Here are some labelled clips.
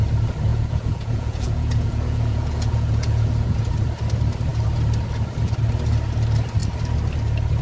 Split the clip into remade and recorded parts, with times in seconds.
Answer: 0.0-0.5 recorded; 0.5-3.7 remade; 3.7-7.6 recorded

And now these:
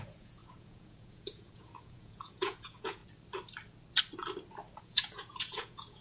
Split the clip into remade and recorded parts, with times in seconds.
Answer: 0.0-3.0 remade; 3.0-4.8 recorded; 4.8-6.0 remade

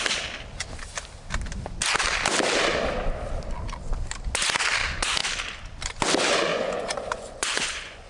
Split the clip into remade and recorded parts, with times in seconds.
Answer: 0.0-6.5 recorded; 6.5-8.1 remade

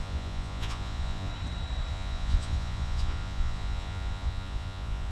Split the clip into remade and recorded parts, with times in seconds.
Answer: 0.0-1.3 remade; 1.3-1.9 recorded; 1.9-5.1 remade